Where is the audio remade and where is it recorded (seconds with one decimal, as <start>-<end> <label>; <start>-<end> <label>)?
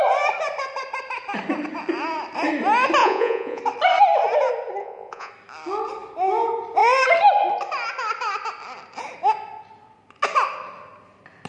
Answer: 0.0-3.0 recorded; 3.0-3.6 remade; 3.6-4.8 recorded; 4.8-5.3 remade; 5.3-11.5 recorded